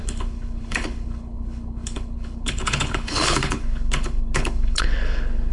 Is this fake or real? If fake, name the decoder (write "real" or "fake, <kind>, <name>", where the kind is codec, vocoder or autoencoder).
fake, codec, HILCodec